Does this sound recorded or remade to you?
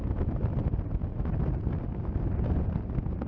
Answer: recorded